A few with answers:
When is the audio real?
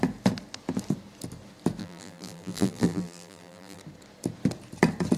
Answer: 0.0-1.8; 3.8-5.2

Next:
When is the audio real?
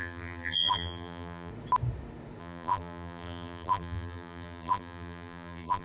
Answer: 1.5-2.4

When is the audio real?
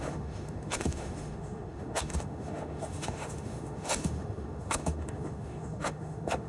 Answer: none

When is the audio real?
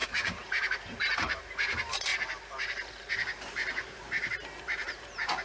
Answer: none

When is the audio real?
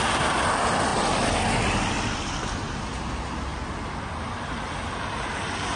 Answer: 0.0-0.9; 2.4-5.8